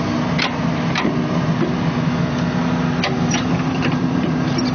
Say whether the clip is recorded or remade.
recorded